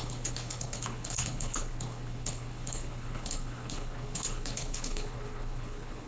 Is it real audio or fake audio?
fake